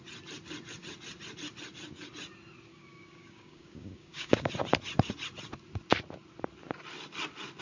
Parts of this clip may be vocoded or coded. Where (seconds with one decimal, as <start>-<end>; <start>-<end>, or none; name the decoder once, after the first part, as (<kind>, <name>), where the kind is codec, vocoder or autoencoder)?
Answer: 2.7-4.5 (codec, DAC)

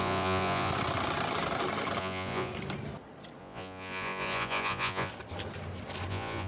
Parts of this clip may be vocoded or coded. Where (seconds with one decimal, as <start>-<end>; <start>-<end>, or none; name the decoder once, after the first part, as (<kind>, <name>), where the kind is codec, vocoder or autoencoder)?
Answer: 0.0-0.7 (vocoder, Vocos); 2.0-2.5; 3.4-5.1; 6.1-6.5

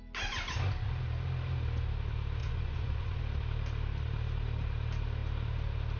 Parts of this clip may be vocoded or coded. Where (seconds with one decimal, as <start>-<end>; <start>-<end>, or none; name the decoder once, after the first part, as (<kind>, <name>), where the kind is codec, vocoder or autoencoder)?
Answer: 2.4-3.2 (vocoder, Vocos)

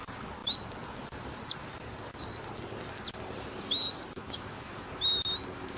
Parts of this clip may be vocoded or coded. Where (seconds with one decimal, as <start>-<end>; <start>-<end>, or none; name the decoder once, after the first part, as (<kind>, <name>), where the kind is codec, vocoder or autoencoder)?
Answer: 4.2-4.7 (autoencoder, DAC-VAE)

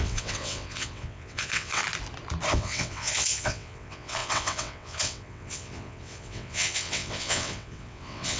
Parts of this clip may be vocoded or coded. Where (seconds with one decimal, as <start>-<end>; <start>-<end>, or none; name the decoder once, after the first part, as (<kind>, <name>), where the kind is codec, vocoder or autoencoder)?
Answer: 0.0-1.8 (vocoder, WaveNeXt); 2.5-8.4

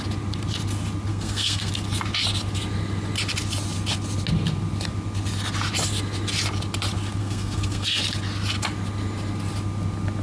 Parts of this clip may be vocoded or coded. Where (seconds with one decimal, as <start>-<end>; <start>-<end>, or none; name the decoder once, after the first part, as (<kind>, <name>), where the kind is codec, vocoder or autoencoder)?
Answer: 1.1-1.7 (codec, SNAC); 7.2-8.0

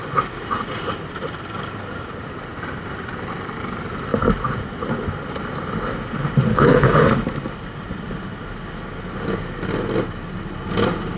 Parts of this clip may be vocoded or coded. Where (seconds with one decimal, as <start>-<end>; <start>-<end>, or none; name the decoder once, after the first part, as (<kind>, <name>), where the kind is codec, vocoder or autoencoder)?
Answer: 6.5-7.1 (codec, HILCodec)

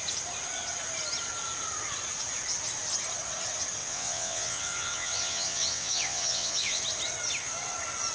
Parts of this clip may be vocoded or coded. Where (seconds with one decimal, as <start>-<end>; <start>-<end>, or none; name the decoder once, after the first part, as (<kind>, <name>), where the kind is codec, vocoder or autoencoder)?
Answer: 3.8-6.8 (vocoder, WaveNeXt)